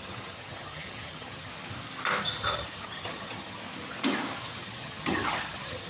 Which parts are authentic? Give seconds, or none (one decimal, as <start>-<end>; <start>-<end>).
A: 1.5-2.2; 3.6-4.4